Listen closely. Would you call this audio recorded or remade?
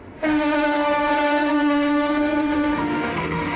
remade